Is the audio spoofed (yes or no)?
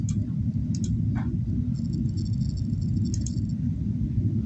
no